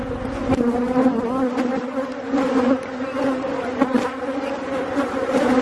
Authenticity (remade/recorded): recorded